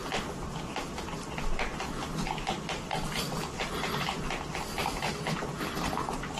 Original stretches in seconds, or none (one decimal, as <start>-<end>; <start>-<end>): 0.0-6.4